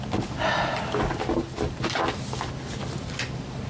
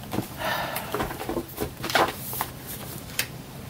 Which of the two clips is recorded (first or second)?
first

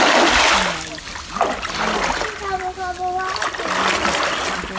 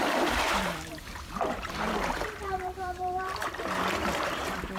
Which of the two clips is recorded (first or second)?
first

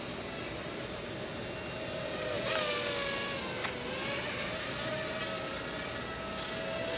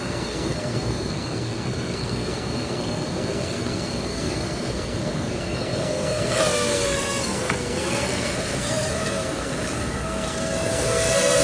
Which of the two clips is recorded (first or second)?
first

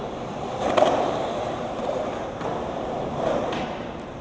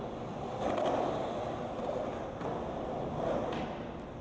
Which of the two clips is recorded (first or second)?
second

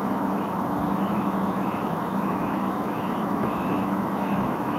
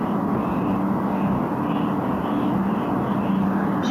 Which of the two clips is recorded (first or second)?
second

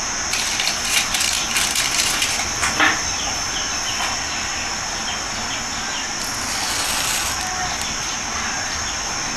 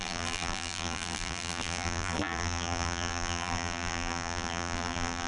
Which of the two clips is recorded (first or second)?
first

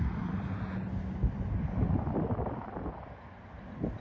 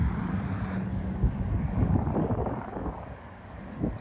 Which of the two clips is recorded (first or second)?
first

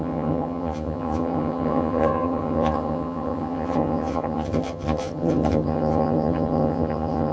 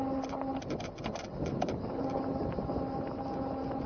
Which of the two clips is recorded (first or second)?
second